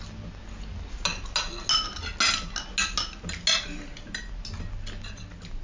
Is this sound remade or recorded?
recorded